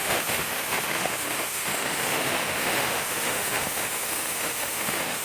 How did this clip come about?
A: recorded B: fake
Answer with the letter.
B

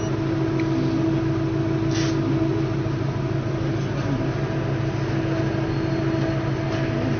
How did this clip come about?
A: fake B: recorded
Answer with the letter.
B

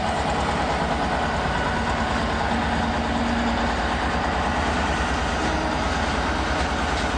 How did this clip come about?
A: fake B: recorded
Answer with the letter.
B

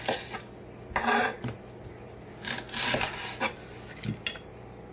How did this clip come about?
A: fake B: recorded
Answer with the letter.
B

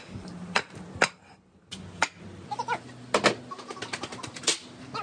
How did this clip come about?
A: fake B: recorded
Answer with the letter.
B